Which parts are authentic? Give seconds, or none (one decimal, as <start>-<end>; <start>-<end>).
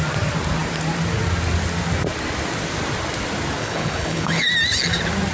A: 0.0-3.6; 4.4-5.3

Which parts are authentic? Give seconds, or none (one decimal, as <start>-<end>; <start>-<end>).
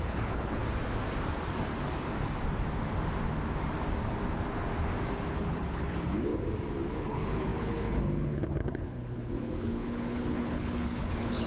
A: 0.6-5.3; 6.3-7.0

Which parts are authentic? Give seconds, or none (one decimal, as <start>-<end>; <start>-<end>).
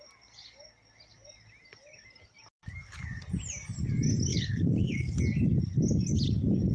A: 0.0-4.3; 5.2-6.7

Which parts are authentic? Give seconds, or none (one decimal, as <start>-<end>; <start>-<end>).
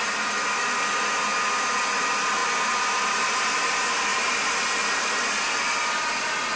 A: 0.0-6.6